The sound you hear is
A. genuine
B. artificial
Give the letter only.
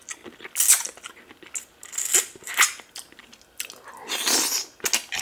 A